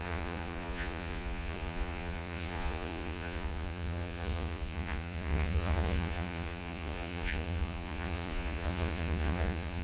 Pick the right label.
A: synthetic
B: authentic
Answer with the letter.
A